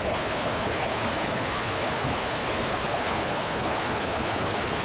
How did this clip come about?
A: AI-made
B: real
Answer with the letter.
A